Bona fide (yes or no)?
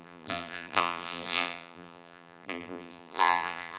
no